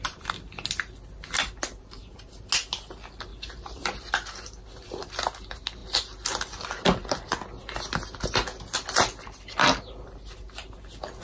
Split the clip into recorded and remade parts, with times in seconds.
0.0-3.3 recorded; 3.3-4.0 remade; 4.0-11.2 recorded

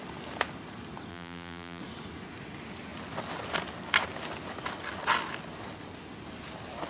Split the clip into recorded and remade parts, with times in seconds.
0.0-1.1 recorded; 1.1-1.8 remade; 1.8-6.9 recorded

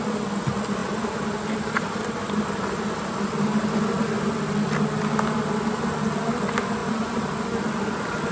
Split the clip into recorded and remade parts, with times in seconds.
0.0-0.8 recorded; 0.8-2.8 remade; 2.8-6.8 recorded; 6.8-7.7 remade; 7.7-8.3 recorded

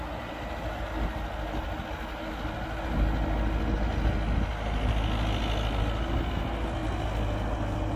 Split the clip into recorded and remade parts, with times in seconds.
0.0-8.0 recorded